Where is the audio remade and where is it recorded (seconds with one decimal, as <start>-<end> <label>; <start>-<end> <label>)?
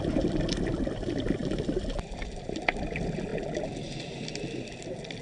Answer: 0.0-3.3 remade; 3.3-4.6 recorded; 4.6-5.2 remade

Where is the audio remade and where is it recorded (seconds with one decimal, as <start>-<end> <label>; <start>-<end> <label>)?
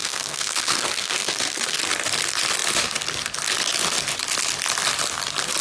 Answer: 0.0-1.8 remade; 1.8-5.6 recorded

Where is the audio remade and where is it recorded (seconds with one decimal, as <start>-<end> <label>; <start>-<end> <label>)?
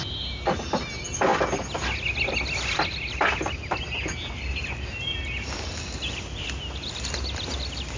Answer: 0.0-8.0 recorded